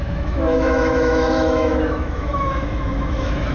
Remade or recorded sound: remade